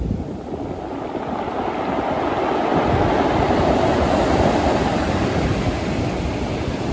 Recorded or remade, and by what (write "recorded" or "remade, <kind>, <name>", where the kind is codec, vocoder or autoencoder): recorded